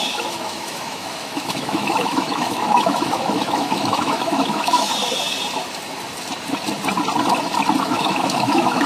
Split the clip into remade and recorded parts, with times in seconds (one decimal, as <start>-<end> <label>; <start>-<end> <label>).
0.0-4.9 remade; 4.9-7.8 recorded; 7.8-8.9 remade

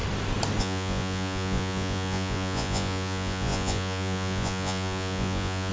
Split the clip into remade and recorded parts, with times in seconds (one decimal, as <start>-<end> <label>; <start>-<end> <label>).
0.0-0.6 recorded; 0.6-5.7 remade

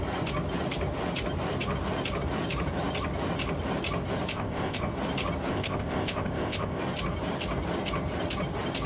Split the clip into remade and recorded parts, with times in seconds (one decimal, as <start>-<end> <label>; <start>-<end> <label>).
0.0-4.3 recorded; 4.3-4.9 remade; 4.9-5.5 recorded; 5.5-6.8 remade; 6.8-8.9 recorded

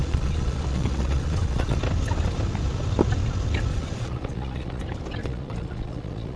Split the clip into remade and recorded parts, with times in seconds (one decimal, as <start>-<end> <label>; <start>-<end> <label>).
0.0-1.8 remade; 1.8-3.7 recorded; 3.7-4.8 remade; 4.8-5.2 recorded; 5.2-6.4 remade